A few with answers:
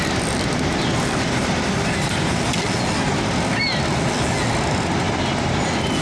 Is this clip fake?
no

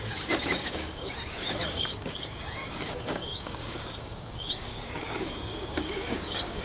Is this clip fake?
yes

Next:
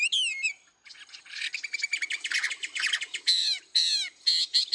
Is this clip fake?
no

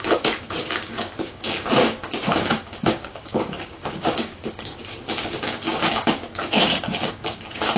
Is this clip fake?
yes